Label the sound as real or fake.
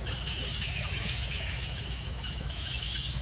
fake